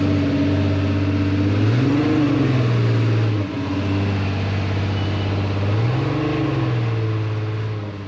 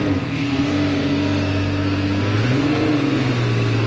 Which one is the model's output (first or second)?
second